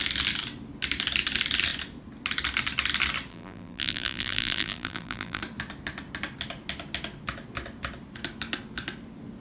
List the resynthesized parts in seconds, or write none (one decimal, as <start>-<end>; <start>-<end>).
3.3-5.4